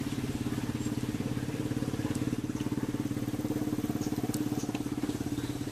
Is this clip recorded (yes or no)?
yes